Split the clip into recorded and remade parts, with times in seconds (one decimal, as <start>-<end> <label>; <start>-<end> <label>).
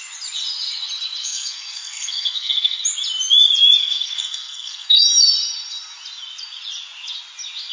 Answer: 0.0-1.2 recorded; 1.2-2.8 remade; 2.8-3.8 recorded; 3.8-5.0 remade; 5.0-7.7 recorded